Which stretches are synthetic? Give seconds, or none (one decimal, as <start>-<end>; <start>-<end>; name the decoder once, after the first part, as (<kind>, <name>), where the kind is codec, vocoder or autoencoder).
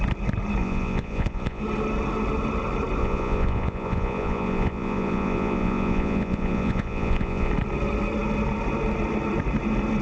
0.6-1.6 (vocoder, Vocos); 3.0-7.5